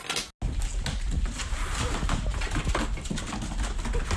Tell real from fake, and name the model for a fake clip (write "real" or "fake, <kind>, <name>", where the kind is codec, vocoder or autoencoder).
real